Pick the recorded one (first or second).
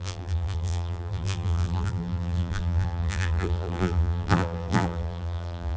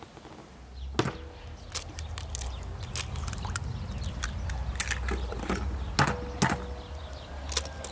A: second